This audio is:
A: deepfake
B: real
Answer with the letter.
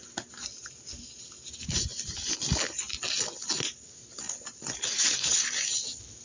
B